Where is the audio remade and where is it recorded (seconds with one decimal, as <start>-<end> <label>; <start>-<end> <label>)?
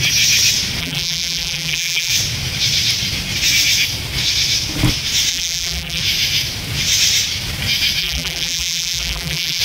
0.0-0.8 recorded; 0.8-2.1 remade; 2.1-5.3 recorded; 5.3-6.0 remade; 6.0-8.0 recorded; 8.0-9.6 remade